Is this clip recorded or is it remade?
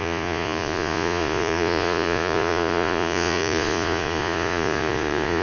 remade